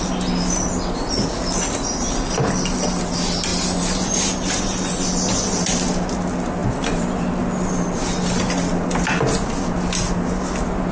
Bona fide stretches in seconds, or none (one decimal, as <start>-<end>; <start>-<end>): 0.0-10.9